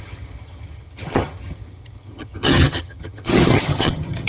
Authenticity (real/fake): fake